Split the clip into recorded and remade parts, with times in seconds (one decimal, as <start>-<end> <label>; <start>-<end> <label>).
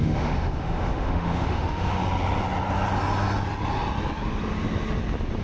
0.0-2.0 remade; 2.0-5.4 recorded